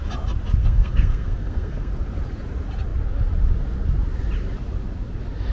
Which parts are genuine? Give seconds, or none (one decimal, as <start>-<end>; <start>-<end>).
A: 0.0-0.6; 1.9-5.5